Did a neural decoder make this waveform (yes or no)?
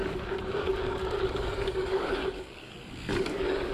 yes